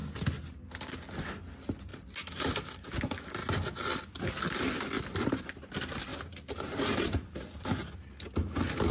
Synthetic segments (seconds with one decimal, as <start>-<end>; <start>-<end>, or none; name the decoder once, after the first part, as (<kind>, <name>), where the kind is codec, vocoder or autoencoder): 6.1-7.4 (vocoder, BigVGAN v2)